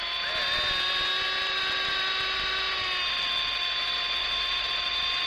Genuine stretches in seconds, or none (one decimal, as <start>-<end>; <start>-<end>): 0.0-4.2; 4.7-5.3